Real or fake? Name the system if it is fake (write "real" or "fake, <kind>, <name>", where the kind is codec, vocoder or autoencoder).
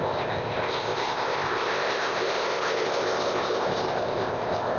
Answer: fake, codec, ZipCodec